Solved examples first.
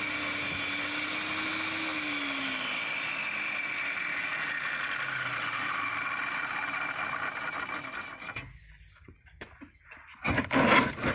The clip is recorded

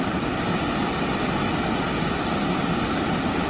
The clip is recorded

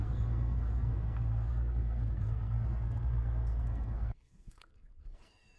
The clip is remade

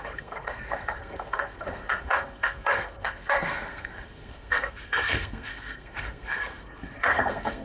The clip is remade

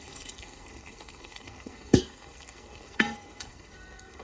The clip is remade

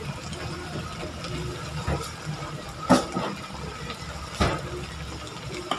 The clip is recorded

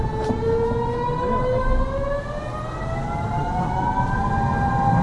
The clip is recorded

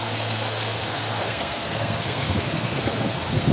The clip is remade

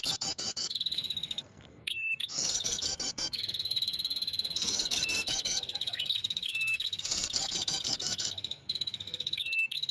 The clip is remade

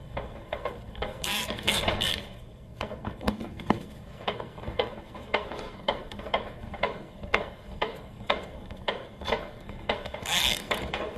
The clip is remade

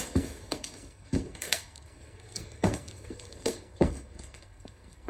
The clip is remade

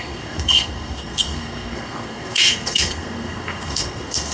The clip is remade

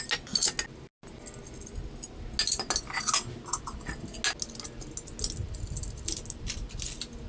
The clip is recorded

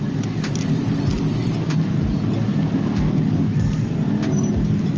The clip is recorded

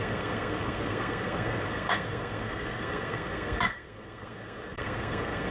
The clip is remade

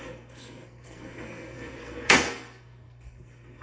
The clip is remade